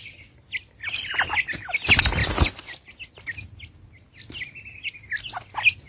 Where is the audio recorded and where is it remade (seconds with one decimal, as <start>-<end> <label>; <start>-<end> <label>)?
0.0-5.9 recorded